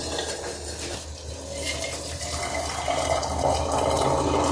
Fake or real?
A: real